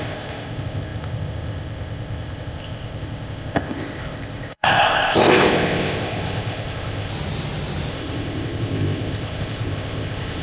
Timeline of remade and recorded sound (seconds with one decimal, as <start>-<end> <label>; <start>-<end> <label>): 0.0-7.1 remade; 7.1-7.9 recorded; 7.9-10.4 remade